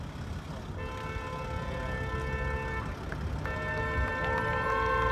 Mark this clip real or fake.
real